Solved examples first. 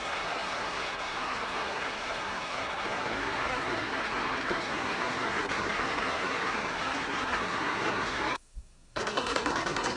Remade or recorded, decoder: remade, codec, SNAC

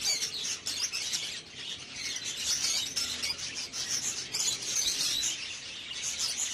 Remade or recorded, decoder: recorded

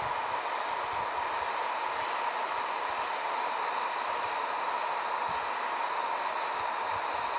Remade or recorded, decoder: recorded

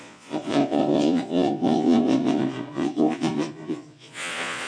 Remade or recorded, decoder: remade, vocoder, Vocos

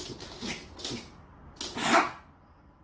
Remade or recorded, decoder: recorded